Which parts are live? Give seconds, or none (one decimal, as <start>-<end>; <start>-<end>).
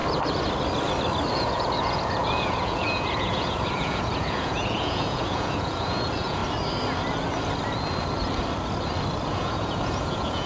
0.0-1.3; 6.4-9.2